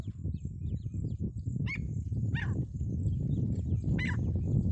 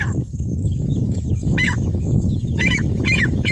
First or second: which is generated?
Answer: second